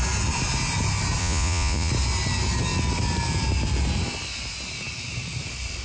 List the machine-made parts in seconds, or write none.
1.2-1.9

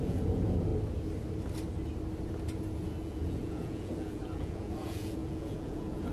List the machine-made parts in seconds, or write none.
0.0-0.7; 3.0-6.1

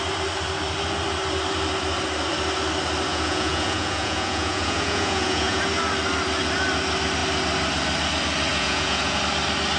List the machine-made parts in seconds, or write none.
3.1-5.6; 8.5-9.2

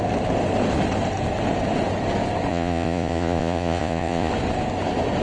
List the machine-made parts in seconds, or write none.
2.5-4.3

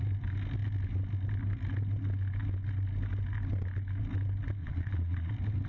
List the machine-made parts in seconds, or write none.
4.6-5.3